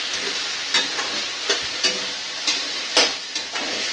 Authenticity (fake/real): real